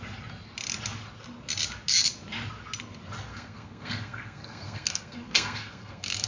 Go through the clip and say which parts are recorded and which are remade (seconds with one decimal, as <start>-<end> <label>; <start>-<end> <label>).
0.0-3.3 recorded; 3.3-6.3 remade